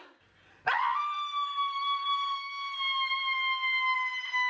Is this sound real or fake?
real